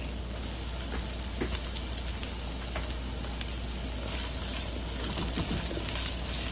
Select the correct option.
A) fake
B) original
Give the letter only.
B